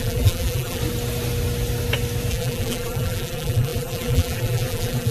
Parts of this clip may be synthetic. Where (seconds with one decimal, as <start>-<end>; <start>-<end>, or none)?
0.0-0.8; 2.3-5.1